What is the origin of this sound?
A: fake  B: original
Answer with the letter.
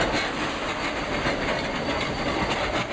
B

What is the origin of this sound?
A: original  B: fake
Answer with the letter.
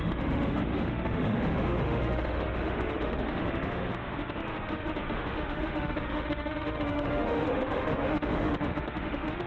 B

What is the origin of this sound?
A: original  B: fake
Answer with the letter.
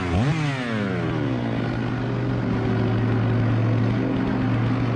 A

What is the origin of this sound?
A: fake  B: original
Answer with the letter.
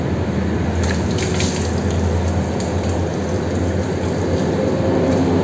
B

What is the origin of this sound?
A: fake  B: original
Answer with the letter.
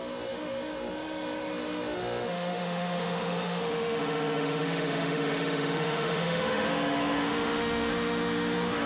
A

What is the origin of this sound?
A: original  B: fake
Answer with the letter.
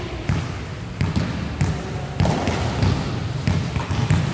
A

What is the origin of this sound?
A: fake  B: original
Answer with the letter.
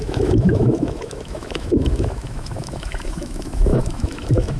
A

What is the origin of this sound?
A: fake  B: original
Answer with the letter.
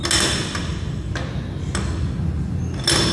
B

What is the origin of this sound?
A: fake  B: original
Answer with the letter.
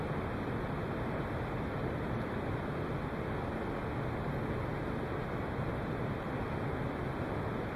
B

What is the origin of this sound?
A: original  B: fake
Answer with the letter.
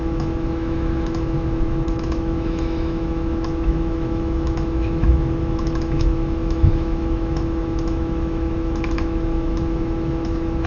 B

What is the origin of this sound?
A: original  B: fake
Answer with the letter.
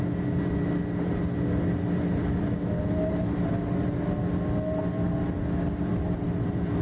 A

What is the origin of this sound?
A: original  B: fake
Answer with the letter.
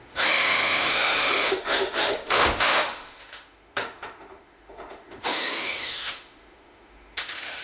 B